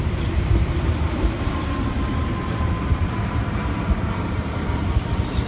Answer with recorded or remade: remade